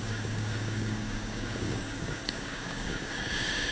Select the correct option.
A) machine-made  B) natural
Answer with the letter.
A